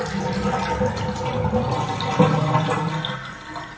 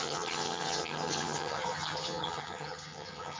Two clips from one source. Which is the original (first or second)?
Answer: first